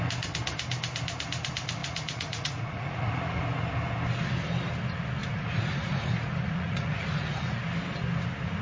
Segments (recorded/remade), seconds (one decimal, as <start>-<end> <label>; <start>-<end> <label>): 0.0-1.8 recorded; 1.8-3.4 remade; 3.4-5.2 recorded; 5.2-7.6 remade; 7.6-8.6 recorded